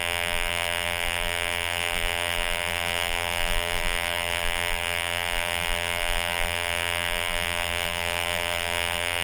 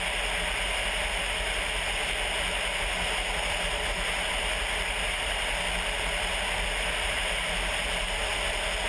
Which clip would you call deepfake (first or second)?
first